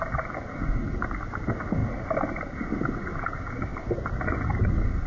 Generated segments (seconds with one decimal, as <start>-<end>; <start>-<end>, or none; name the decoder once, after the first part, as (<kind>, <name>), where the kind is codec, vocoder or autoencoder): none